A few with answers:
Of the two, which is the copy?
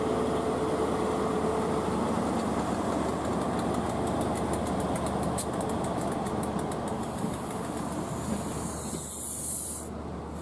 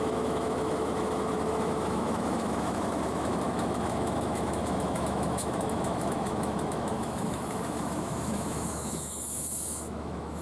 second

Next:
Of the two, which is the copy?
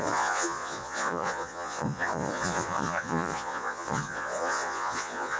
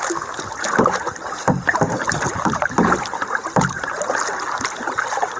first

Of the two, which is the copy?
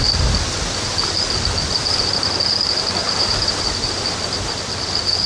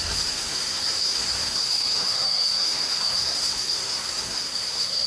second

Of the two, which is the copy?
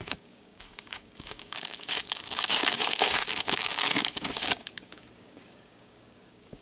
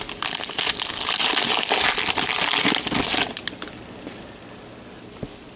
first